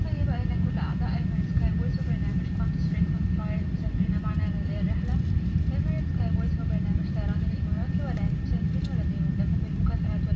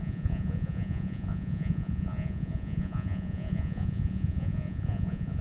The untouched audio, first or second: first